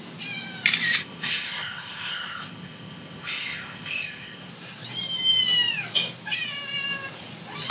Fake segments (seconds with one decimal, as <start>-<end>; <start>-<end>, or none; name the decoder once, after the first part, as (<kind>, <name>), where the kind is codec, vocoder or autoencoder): 1.0-4.5 (codec, ZipCodec)